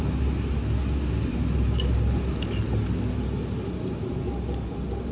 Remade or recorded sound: recorded